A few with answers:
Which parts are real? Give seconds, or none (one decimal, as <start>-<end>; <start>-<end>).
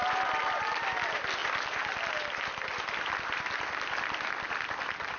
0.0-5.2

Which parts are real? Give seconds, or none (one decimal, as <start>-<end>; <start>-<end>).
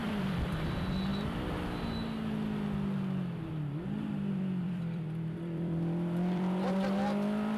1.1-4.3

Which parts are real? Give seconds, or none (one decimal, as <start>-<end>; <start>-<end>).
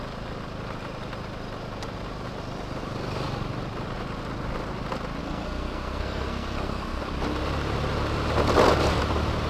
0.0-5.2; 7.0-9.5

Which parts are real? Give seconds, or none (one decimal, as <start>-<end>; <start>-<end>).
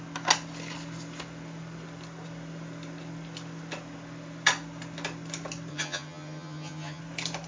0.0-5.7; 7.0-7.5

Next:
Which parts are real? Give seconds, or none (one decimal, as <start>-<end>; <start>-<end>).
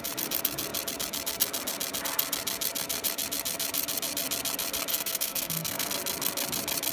0.0-4.9; 5.9-6.9